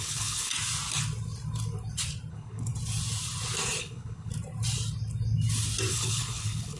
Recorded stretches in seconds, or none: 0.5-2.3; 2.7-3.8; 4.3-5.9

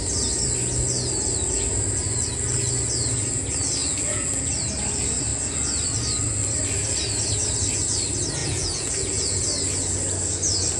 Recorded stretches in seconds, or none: 0.0-3.8; 4.5-8.4; 9.4-10.8

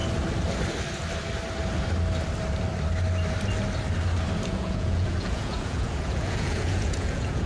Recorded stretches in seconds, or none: 0.0-4.5